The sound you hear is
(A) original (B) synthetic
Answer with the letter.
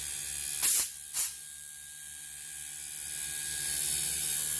A